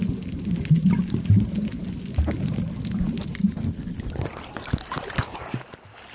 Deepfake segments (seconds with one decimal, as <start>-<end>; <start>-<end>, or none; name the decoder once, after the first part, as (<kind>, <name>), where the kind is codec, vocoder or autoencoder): none